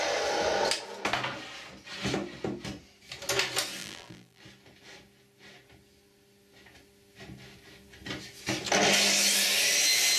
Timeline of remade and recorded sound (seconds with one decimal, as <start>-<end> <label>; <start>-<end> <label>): 0.0-3.8 recorded; 3.8-4.4 remade; 4.4-10.2 recorded